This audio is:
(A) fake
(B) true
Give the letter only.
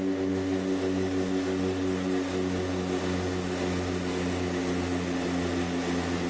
B